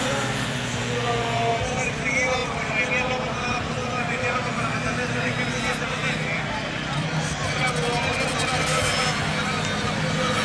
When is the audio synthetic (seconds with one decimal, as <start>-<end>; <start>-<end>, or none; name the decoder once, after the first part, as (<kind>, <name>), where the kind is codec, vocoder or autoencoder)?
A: none